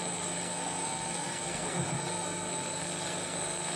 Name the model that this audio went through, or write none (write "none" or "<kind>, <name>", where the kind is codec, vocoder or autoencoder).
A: codec, SNAC